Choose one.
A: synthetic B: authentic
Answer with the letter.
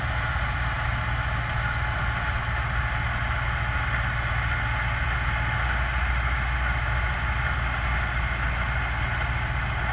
B